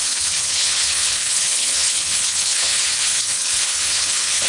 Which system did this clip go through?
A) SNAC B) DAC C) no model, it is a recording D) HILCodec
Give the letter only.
D